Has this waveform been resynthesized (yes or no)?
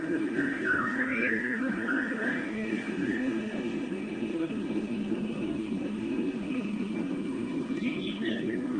yes